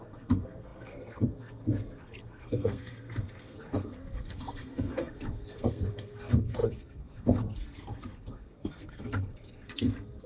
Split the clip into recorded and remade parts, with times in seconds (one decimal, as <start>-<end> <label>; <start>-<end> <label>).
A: 0.0-10.3 remade